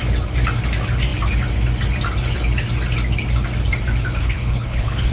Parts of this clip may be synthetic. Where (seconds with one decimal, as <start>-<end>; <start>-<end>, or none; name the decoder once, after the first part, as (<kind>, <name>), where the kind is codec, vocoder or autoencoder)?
4.2-5.1 (codec, HILCodec)